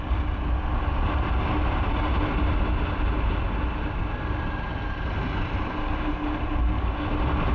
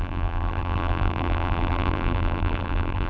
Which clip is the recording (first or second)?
first